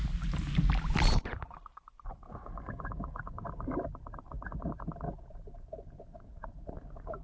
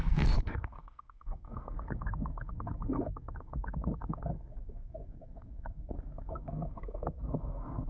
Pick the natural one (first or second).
first